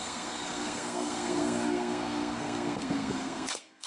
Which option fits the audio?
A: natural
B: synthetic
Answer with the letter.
B